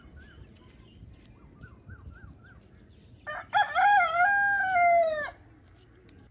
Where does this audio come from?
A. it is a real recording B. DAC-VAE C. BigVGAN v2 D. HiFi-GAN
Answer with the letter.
A